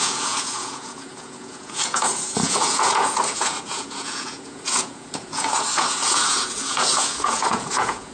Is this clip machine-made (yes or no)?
yes